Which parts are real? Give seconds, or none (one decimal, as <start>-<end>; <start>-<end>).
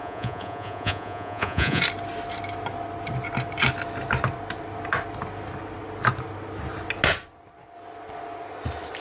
1.8-9.0